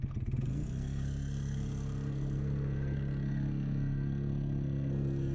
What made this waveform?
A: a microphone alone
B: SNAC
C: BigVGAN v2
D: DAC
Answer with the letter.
B